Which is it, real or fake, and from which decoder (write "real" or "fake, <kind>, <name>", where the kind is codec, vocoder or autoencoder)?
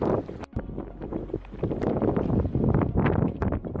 fake, vocoder, BigVGAN v2